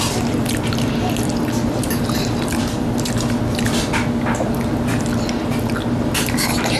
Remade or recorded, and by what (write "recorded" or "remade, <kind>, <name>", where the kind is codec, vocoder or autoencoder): recorded